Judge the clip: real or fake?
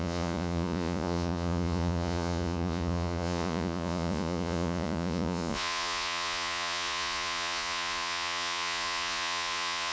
fake